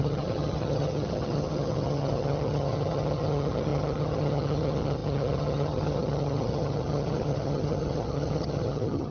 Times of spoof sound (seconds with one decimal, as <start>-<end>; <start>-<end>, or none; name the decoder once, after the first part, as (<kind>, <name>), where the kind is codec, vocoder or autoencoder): 0.0-9.1 (vocoder, HiFi-GAN)